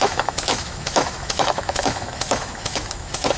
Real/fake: fake